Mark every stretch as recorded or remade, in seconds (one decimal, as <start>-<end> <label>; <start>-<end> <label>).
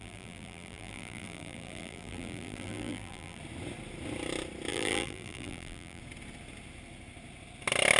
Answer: 0.0-3.4 remade; 3.4-4.7 recorded; 4.7-6.0 remade; 6.0-8.0 recorded